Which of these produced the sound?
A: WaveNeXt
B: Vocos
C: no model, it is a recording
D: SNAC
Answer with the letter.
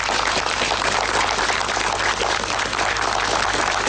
C